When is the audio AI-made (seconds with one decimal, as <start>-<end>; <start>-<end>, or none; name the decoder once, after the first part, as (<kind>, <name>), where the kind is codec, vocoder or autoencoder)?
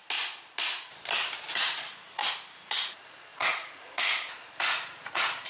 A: 1.5-2.2 (vocoder, Vocos); 2.8-5.5